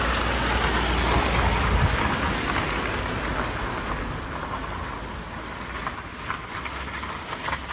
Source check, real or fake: real